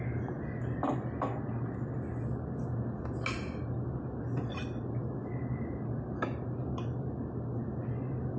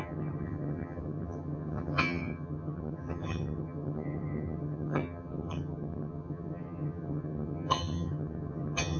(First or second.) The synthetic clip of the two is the second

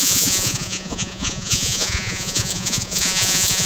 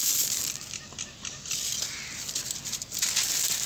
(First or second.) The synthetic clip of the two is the first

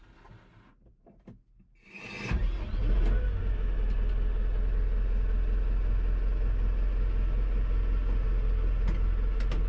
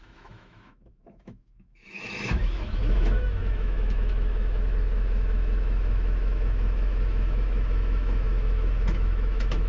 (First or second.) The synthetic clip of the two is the second